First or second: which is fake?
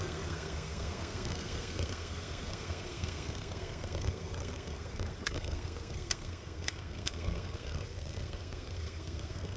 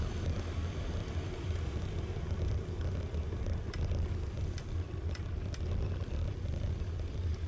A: first